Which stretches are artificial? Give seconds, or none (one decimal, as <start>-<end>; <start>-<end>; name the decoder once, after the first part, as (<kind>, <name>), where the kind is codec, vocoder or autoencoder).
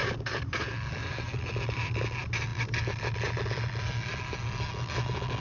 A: 0.0-1.9 (vocoder, BigVGAN v2)